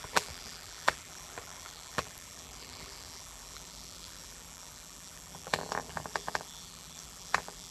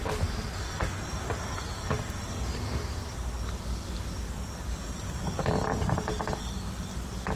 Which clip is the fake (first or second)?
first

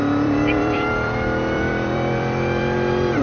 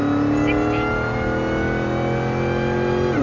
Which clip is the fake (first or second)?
first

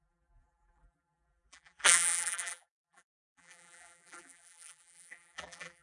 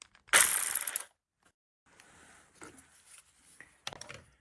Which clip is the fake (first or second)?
first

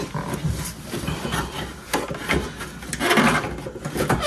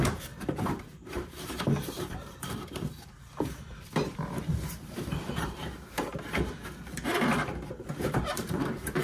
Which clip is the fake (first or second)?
second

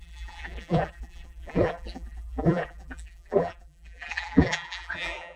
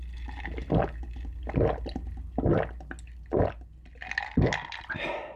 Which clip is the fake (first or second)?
first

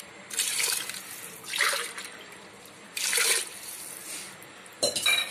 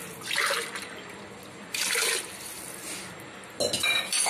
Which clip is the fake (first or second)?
first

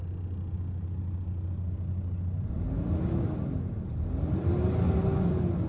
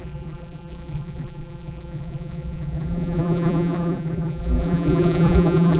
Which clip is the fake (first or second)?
second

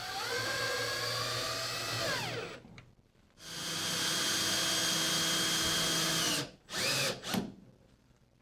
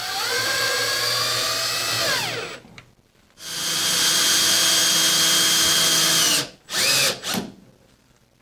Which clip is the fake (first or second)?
first